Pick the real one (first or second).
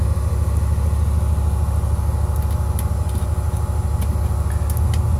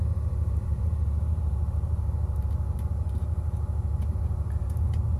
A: first